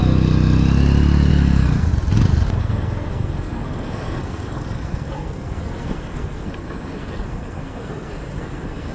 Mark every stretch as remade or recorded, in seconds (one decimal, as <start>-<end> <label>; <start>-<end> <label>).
0.0-1.3 recorded; 1.3-1.9 remade; 1.9-2.6 recorded; 2.6-8.9 remade